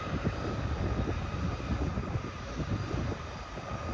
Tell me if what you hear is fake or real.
real